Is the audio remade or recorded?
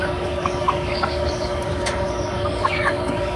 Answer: remade